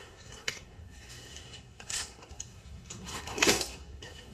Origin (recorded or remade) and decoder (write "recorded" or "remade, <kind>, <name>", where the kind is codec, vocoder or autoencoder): remade, codec, SNAC